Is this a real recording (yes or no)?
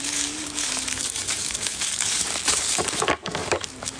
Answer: no